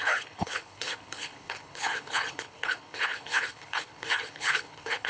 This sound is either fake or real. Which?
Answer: fake